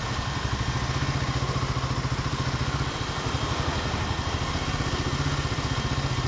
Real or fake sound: real